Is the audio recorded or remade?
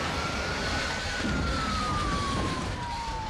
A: remade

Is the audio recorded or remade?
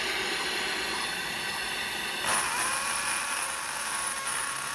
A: recorded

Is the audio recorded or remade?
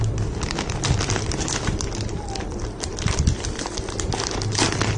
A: recorded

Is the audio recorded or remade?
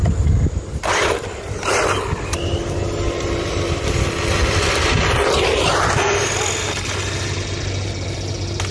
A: recorded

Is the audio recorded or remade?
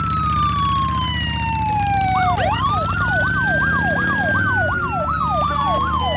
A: remade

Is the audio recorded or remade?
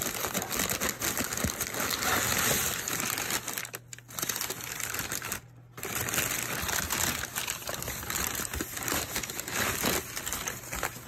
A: recorded